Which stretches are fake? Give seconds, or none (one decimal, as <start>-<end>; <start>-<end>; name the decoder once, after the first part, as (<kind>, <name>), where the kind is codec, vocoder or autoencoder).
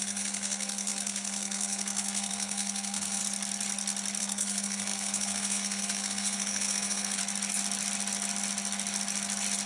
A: 0.0-3.2 (codec, SNAC); 4.2-7.2